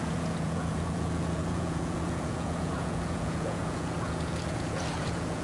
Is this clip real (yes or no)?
no